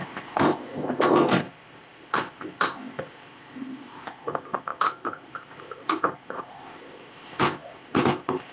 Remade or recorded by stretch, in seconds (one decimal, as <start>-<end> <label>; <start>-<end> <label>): 0.0-8.5 remade